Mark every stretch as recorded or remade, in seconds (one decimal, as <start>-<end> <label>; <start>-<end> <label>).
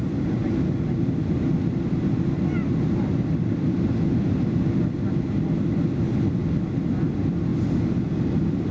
0.0-8.7 recorded